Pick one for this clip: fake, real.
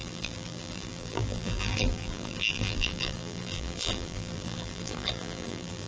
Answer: fake